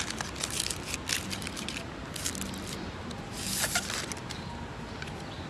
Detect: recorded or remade recorded